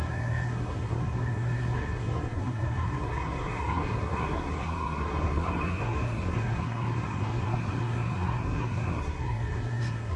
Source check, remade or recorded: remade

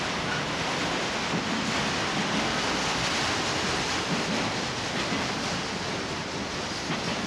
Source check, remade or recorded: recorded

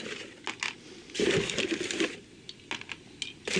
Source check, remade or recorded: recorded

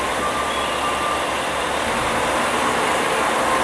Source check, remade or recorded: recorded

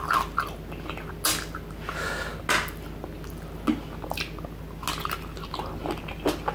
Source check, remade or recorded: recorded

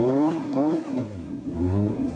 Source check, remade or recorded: remade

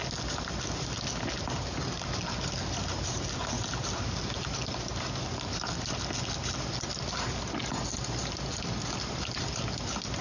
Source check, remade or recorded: recorded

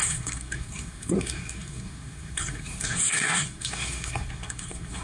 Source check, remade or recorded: remade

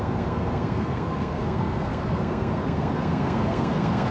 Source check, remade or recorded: remade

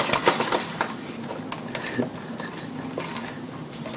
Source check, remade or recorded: recorded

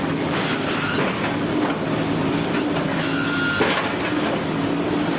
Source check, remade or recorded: recorded